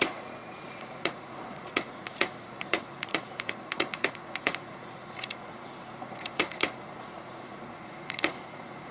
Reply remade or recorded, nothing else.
remade